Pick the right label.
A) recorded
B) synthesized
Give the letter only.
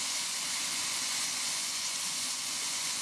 B